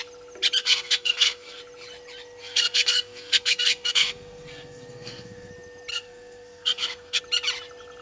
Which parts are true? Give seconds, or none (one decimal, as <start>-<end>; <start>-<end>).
0.0-0.6; 1.6-2.4; 5.5-5.9; 7.2-8.0